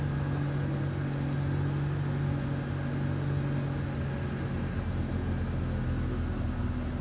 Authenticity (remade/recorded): recorded